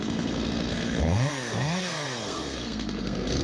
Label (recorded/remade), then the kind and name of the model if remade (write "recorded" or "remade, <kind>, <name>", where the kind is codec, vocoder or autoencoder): remade, codec, SNAC